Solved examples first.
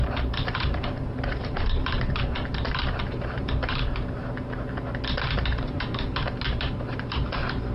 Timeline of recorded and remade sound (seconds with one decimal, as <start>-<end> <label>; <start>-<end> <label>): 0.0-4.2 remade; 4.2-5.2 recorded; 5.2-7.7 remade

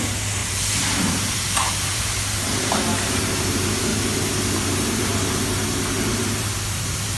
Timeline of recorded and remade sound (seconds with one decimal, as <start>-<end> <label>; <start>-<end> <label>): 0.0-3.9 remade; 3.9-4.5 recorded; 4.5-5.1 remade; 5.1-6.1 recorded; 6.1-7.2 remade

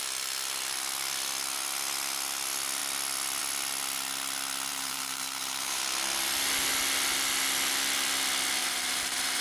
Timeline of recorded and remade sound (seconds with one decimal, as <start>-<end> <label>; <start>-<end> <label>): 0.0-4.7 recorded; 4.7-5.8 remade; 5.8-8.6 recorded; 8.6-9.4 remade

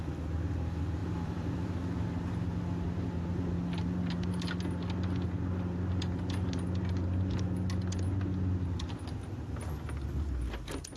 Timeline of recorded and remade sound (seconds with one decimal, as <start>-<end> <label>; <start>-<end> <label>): 0.0-1.0 recorded; 1.0-1.7 remade; 1.7-11.0 recorded

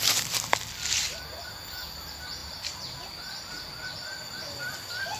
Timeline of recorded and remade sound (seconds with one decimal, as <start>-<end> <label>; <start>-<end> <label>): 0.0-2.4 recorded; 2.4-3.0 remade; 3.0-5.2 recorded